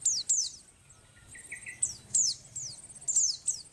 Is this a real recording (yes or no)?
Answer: yes